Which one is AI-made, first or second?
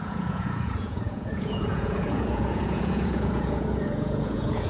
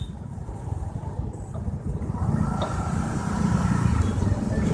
first